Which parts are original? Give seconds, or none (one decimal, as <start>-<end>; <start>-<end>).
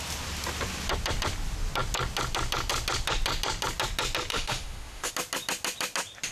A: 0.0-4.3; 5.1-6.3